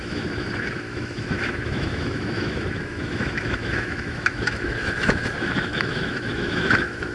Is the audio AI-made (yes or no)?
yes